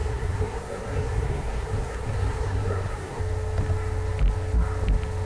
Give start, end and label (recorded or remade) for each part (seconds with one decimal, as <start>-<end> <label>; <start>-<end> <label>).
0.0-3.2 remade; 3.2-5.3 recorded